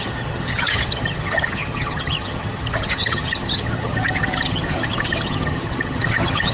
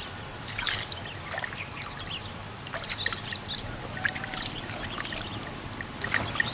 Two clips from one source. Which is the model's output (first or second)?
first